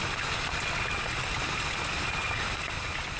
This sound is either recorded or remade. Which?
recorded